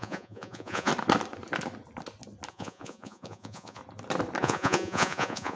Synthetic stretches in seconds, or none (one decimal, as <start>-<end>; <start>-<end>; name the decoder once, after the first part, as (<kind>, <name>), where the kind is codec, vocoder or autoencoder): 0.0-0.9 (vocoder, Vocos); 2.5-3.8; 4.4-5.6